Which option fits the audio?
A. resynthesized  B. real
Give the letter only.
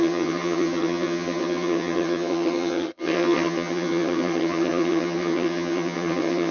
A